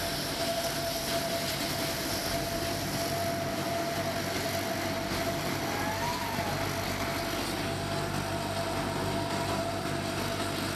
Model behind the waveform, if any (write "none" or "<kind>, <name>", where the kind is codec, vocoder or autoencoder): none